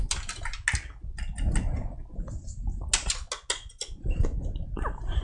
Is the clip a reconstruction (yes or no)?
no